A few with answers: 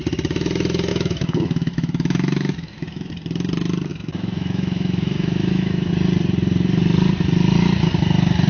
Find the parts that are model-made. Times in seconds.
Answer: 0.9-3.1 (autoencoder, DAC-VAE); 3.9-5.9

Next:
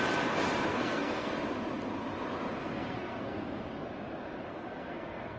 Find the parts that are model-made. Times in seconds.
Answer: 0.7-1.3 (codec, SNAC); 2.6-3.7; 4.5-5.4

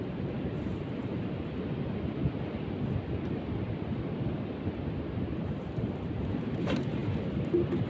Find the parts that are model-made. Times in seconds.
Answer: 0.0-0.7 (vocoder, BigVGAN v2); 5.4-7.9

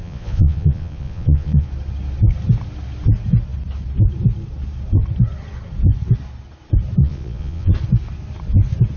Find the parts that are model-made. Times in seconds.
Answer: 0.0-1.7 (vocoder, Vocos); 7.0-7.7

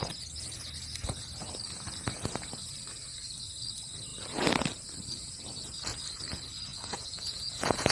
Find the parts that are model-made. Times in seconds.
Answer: 6.7-7.9 (vocoder, Vocos)

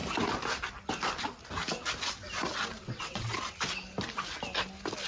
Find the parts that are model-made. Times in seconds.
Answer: 2.8-3.3 (vocoder, WaveNeXt)

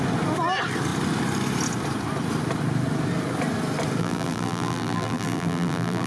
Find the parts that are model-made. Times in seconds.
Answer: 4.0-6.1 (vocoder, BigVGAN v2)

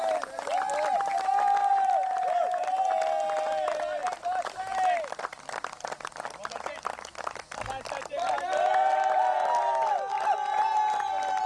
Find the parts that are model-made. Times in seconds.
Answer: none